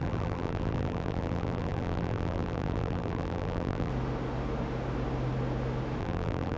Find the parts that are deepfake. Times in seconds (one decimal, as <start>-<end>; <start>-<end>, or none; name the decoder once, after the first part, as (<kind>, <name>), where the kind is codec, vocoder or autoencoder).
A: 0.0-3.9 (vocoder, BigVGAN v2); 6.0-6.6